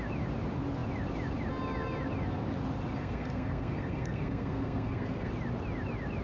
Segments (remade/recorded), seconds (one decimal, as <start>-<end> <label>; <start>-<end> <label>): 0.0-2.9 recorded; 2.9-5.3 remade; 5.3-6.2 recorded